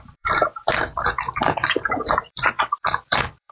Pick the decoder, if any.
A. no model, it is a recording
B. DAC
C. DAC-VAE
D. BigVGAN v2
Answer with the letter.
D